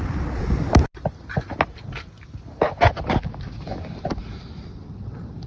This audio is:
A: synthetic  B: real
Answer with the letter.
B